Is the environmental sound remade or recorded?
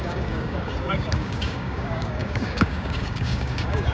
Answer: remade